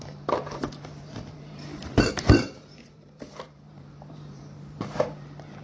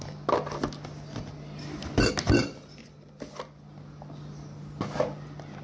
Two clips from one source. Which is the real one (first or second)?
second